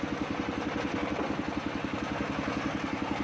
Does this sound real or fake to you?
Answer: real